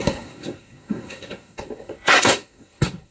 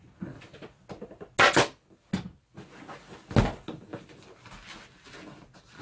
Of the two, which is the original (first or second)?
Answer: second